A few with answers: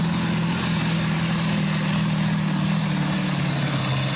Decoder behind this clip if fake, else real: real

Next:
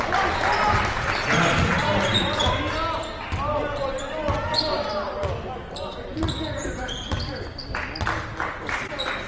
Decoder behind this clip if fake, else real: real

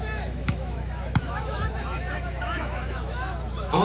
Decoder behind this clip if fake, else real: fake, autoencoder, DAC-VAE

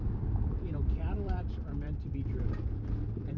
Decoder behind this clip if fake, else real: fake, vocoder, BigVGAN v2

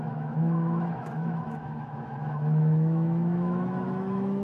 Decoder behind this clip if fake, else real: fake, autoencoder, DAC-VAE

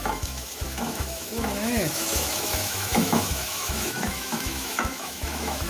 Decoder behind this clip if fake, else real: fake, autoencoder, DAC-VAE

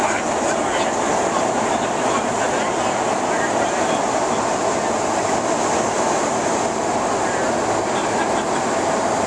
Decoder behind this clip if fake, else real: real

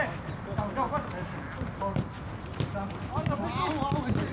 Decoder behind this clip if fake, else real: real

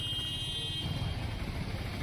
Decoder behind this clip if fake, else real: real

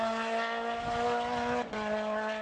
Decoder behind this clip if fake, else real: real